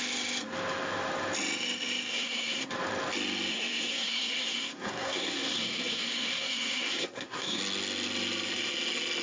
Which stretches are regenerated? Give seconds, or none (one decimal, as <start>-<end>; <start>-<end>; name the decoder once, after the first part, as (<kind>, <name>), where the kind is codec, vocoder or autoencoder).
2.1-2.7 (codec, SNAC); 3.5-7.6